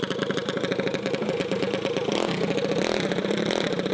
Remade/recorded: recorded